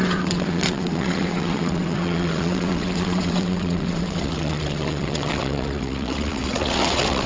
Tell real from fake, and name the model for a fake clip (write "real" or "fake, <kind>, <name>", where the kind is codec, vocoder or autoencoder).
fake, vocoder, WaveNeXt